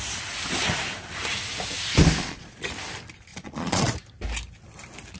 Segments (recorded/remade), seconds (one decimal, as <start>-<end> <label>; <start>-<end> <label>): 0.0-2.2 recorded; 2.2-2.7 remade; 2.7-3.3 recorded; 3.3-3.9 remade; 3.9-5.2 recorded